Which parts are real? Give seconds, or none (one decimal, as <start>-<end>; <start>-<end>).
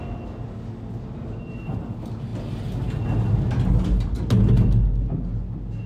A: 0.0-5.9